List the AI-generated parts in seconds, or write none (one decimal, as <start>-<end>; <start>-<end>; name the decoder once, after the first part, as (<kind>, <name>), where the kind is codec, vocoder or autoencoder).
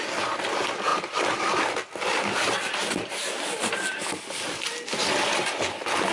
none